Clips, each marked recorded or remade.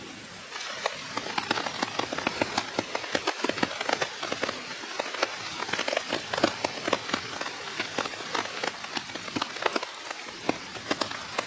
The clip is recorded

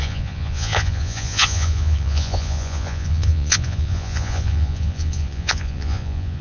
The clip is remade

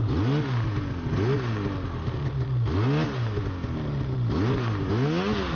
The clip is recorded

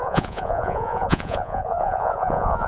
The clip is remade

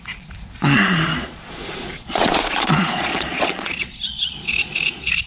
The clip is remade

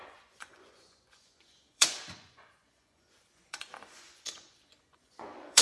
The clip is remade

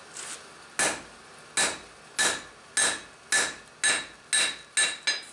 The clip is recorded